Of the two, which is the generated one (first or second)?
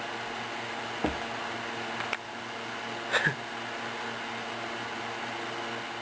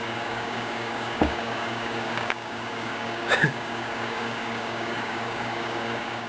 second